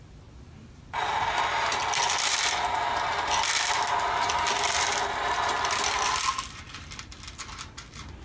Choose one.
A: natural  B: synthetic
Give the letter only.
A